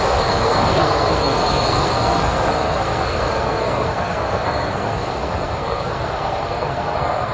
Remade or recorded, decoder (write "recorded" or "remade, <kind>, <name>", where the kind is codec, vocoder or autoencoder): remade, codec, SNAC